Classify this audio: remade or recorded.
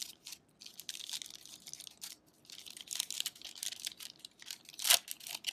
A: recorded